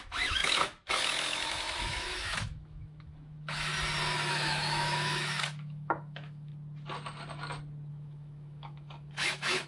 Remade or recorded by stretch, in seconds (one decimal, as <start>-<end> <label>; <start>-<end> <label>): 0.0-3.7 remade; 3.7-4.3 recorded; 4.3-6.5 remade; 6.5-7.9 recorded; 7.9-9.7 remade